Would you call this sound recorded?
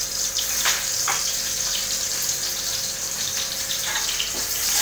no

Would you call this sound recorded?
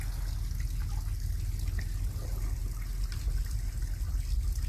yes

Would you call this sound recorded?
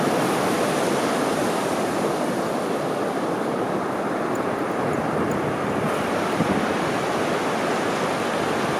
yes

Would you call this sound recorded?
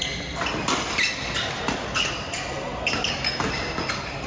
yes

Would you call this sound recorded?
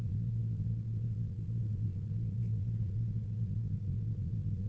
no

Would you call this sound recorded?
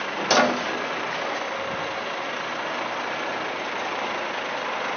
yes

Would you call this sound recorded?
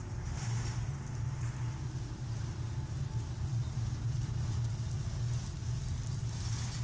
yes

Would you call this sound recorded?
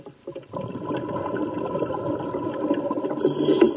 yes